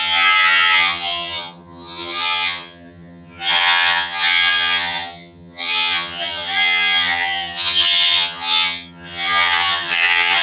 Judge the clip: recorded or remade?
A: remade